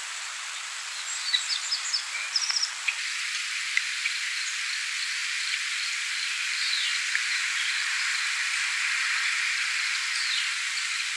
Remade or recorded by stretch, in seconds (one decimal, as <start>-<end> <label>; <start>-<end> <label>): 0.0-5.2 recorded; 5.2-8.1 remade; 8.1-11.2 recorded